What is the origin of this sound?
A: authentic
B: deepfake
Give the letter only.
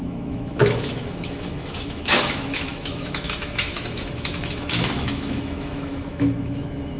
B